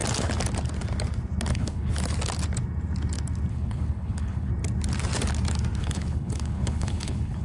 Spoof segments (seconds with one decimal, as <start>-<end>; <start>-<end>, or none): 1.5-1.9; 3.5-4.5; 5.8-7.4